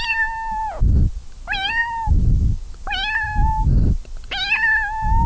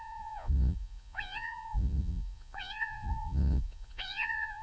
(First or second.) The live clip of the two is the first